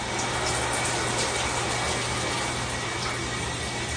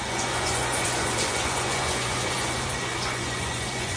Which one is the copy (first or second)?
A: second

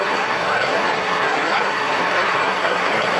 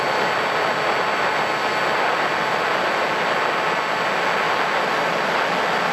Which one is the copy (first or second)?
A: first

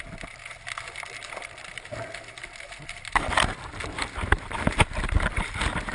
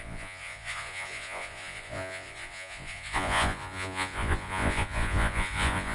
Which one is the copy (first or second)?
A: second